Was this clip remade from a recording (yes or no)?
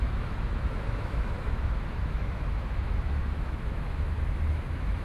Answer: yes